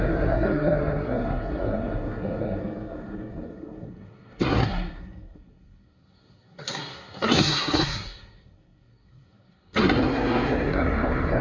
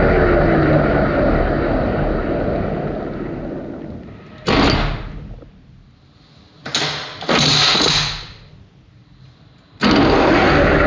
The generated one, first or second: first